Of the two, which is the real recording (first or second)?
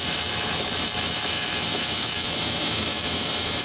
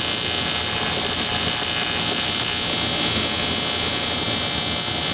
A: second